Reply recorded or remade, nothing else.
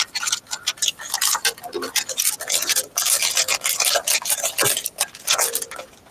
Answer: recorded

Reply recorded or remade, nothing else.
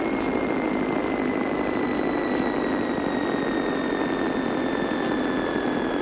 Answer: recorded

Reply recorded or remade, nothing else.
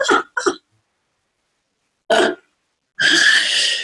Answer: recorded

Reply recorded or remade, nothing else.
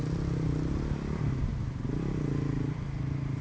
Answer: recorded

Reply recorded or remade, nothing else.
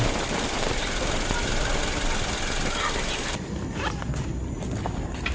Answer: recorded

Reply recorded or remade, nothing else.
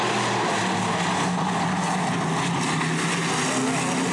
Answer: recorded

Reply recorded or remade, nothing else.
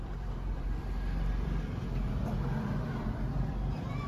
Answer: remade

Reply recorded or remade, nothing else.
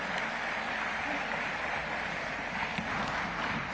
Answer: remade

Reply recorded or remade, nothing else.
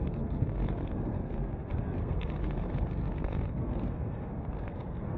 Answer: remade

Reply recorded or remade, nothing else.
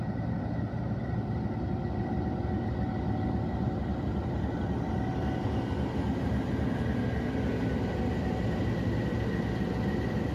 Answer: recorded